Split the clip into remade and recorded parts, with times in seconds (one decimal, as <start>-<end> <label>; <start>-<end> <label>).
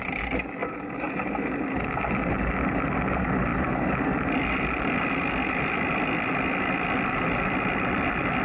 0.0-8.4 recorded